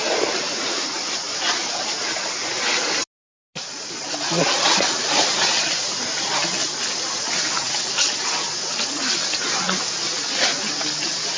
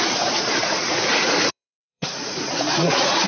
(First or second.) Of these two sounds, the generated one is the second